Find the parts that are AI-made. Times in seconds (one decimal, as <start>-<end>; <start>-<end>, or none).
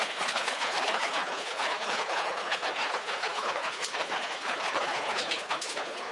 0.0-6.1